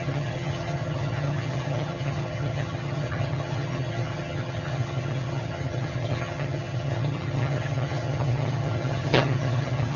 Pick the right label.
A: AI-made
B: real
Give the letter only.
A